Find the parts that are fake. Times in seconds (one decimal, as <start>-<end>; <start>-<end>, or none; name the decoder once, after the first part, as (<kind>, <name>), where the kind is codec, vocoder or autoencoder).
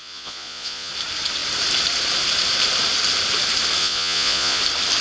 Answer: 0.0-0.9 (vocoder, Vocos); 3.8-4.6